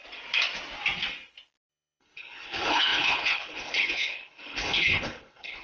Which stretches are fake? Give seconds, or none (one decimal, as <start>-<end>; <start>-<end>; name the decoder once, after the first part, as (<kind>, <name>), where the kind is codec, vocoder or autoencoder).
1.7-5.6 (codec, HILCodec)